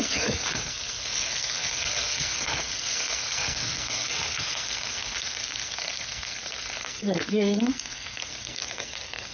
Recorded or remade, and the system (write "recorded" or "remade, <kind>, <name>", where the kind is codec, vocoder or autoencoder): remade, codec, SNAC